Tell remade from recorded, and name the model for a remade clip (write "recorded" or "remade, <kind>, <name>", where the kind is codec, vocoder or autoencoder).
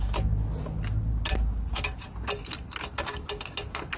recorded